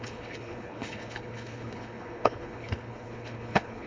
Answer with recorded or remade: remade